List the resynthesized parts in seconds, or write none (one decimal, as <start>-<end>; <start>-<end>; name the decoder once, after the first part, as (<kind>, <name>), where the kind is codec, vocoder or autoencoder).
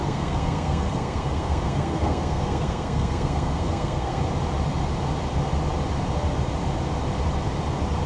0.0-4.2 (codec, SNAC)